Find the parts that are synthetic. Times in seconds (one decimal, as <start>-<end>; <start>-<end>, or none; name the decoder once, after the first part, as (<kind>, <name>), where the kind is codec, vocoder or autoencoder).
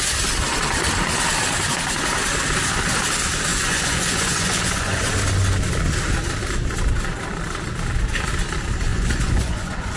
3.5-5.1 (vocoder, Vocos); 8.9-10.0